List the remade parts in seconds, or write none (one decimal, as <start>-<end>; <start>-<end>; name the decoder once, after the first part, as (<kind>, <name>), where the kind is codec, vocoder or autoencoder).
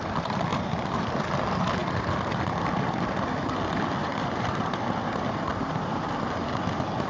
0.5-1.1 (vocoder, BigVGAN v2); 4.0-4.8; 5.5-6.1